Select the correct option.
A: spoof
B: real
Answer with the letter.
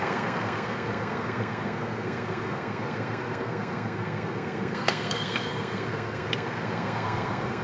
A